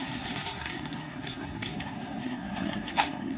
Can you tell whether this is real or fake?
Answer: fake